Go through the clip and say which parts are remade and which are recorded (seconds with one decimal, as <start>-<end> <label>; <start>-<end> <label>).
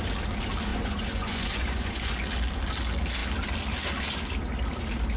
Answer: 0.0-0.7 recorded; 0.7-2.1 remade; 2.1-5.2 recorded